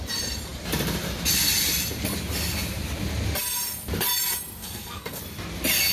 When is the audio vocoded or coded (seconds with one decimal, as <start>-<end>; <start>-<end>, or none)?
4.6-5.2